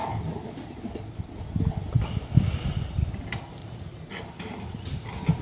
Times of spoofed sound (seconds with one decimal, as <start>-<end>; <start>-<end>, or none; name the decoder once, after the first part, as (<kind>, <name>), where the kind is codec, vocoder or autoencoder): 3.6-4.1 (vocoder, Vocos)

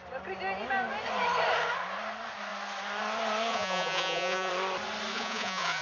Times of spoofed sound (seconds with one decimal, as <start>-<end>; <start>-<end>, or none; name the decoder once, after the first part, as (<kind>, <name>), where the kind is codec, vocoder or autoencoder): 3.5-4.5 (vocoder, Vocos); 5.1-5.8

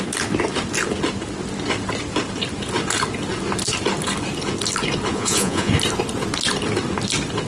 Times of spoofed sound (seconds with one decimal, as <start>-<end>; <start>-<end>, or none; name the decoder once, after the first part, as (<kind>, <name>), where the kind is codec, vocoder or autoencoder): 5.1-5.7 (vocoder, Vocos)

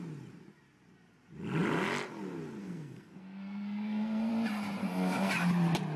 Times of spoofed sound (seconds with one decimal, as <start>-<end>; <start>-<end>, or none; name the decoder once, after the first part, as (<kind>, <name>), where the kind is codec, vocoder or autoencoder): 2.6-4.3 (codec, SNAC); 4.8-5.3

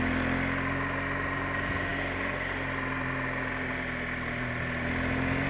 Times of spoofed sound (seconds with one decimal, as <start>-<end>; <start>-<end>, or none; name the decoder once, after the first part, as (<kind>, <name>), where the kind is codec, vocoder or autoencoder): none